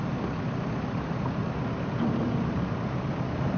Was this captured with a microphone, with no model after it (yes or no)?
yes